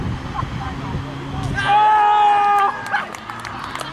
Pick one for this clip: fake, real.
real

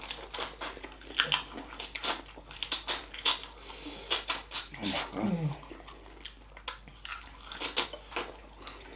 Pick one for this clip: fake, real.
real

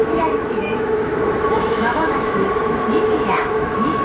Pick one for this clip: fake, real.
fake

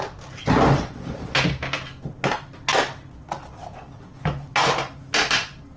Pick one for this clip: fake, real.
real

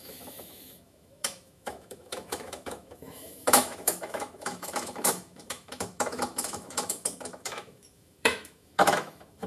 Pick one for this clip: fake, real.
fake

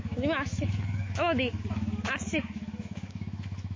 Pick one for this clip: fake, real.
fake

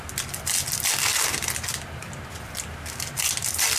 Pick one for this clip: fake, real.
real